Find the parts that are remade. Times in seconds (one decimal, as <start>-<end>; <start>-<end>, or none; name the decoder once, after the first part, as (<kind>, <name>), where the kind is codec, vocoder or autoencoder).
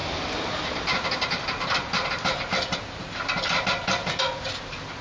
none